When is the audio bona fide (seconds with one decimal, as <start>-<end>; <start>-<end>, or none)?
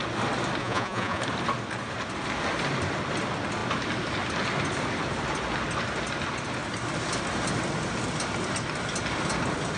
0.0-0.6; 1.2-9.8